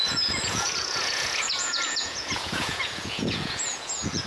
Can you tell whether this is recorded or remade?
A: remade